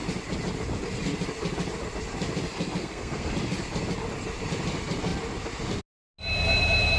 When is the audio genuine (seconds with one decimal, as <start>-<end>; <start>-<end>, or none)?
0.0-2.8; 3.3-7.0